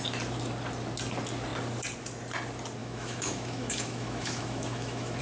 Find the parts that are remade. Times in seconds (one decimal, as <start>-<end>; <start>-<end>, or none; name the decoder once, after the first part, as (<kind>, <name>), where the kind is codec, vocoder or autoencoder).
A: 2.8-5.2 (autoencoder, DAC-VAE)